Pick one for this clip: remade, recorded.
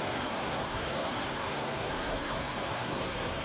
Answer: remade